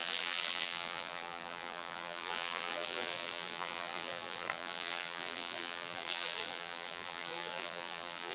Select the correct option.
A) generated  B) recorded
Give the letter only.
A